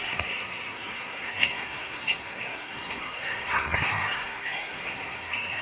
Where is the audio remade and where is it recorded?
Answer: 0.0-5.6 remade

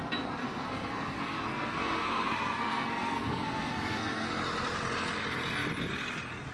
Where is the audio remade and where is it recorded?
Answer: 0.0-0.4 recorded; 0.4-4.3 remade; 4.3-6.5 recorded

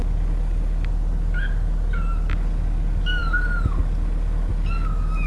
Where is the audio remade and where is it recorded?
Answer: 0.0-5.3 recorded

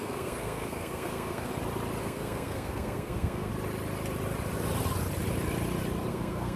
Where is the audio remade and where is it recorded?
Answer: 0.0-1.5 remade; 1.5-2.0 recorded; 2.0-3.5 remade; 3.5-6.1 recorded; 6.1-6.6 remade

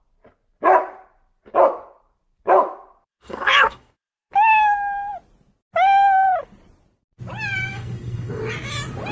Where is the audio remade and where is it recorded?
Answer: 0.0-3.1 recorded; 3.1-4.3 remade; 4.3-7.7 recorded; 7.7-8.4 remade; 8.4-9.1 recorded